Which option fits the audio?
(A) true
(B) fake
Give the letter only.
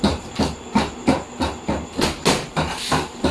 A